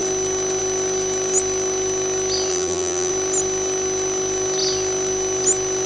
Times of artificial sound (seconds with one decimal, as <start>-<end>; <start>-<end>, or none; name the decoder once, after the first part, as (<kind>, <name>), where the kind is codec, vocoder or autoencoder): 2.5-3.1 (vocoder, BigVGAN v2)